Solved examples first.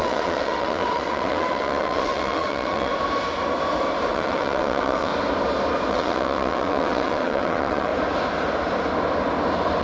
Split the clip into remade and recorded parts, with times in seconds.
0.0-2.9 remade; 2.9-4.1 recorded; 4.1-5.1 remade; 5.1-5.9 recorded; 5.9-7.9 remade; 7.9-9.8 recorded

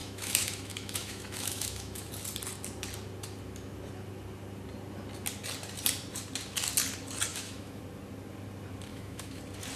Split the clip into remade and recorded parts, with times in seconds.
0.0-2.1 remade; 2.1-7.3 recorded; 7.3-7.8 remade; 7.8-8.9 recorded; 8.9-9.4 remade; 9.4-9.8 recorded

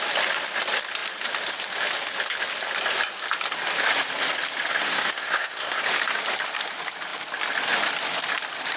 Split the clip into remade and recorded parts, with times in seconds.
0.0-4.7 recorded; 4.7-5.8 remade; 5.8-8.8 recorded